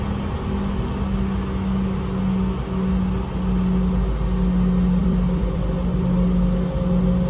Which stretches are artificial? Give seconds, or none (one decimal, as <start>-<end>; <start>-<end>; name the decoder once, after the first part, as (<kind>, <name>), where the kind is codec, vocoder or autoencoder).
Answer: 5.0-5.6 (vocoder, BigVGAN v2)